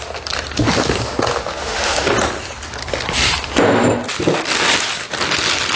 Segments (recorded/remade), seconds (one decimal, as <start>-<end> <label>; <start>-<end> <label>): 0.0-1.4 recorded; 1.4-2.0 remade; 2.0-5.8 recorded